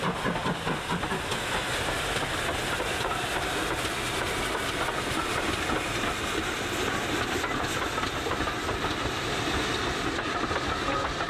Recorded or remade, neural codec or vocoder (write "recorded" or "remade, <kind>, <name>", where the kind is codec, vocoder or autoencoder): recorded